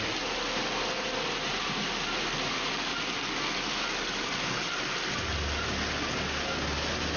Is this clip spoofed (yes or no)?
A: no